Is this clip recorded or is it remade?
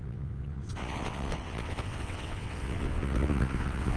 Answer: remade